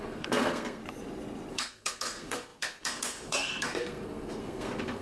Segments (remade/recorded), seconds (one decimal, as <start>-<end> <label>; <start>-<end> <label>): 0.0-0.8 remade; 0.8-1.5 recorded; 1.5-5.0 remade